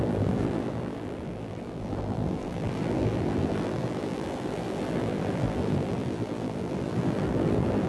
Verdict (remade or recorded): remade